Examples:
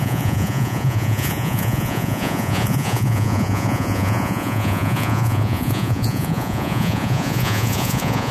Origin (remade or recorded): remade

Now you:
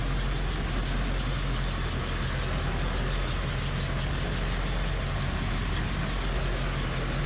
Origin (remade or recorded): recorded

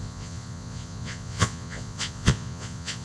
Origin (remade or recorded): remade